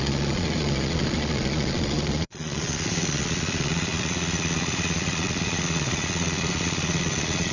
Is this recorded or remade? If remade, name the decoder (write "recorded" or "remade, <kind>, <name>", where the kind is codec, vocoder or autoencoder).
remade, vocoder, Vocos